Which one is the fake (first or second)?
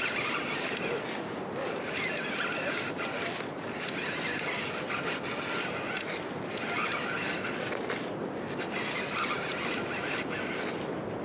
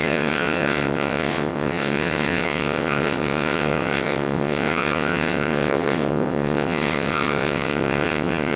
second